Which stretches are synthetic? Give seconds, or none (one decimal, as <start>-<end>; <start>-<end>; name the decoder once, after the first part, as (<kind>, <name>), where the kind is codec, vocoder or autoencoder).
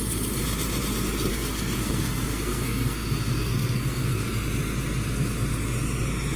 1.3-4.3 (codec, SNAC)